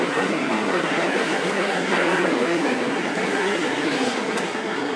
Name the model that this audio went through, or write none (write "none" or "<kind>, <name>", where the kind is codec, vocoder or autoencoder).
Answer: codec, SNAC